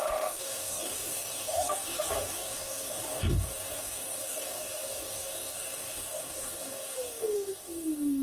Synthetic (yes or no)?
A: yes